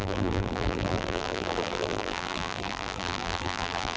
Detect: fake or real fake